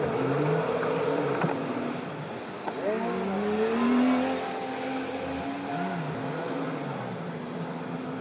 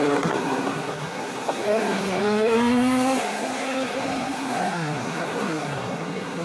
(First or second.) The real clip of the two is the first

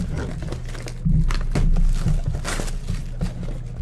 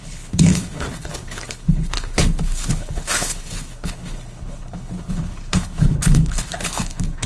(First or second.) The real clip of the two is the first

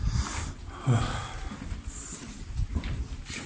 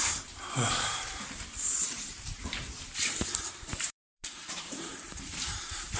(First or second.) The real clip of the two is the first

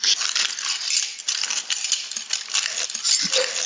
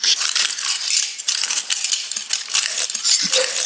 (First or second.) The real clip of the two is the first